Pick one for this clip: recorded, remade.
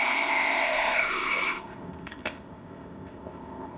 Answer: remade